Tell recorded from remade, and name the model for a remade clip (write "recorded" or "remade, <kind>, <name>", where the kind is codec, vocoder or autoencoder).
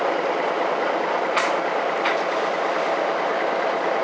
recorded